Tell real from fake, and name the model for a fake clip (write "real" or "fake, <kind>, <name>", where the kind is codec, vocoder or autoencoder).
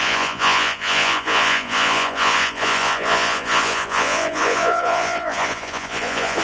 fake, vocoder, Vocos